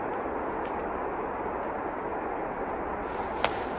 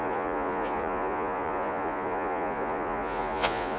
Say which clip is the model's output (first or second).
second